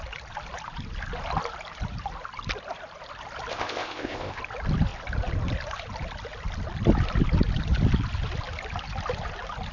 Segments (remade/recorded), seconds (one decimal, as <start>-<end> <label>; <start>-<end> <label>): 0.0-3.5 recorded; 3.5-4.4 remade; 4.4-9.7 recorded